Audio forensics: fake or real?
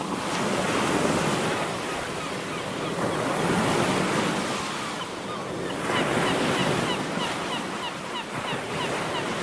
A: real